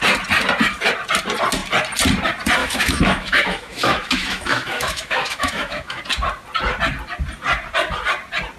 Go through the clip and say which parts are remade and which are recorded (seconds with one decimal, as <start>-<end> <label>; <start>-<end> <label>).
0.0-2.6 recorded; 2.6-6.0 remade; 6.0-8.6 recorded